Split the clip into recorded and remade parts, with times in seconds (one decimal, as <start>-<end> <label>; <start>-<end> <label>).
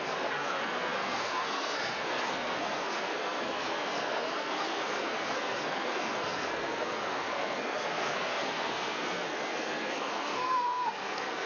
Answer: 0.0-11.5 remade